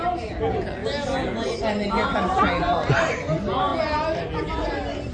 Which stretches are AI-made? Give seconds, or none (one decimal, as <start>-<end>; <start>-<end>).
none